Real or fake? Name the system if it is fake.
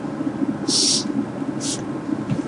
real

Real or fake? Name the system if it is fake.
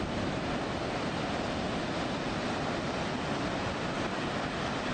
real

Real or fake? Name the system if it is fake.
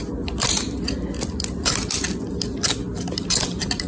real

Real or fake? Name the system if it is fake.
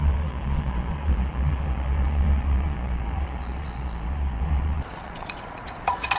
fake, vocoder, Vocos